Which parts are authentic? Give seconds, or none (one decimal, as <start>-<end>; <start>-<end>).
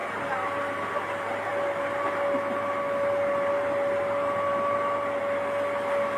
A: 0.0-6.2